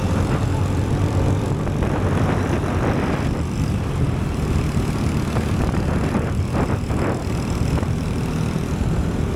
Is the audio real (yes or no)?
no